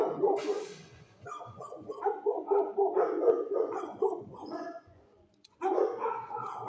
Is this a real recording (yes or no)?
no